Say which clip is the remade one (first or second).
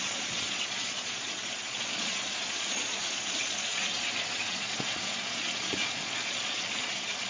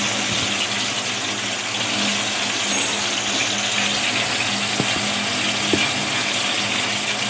first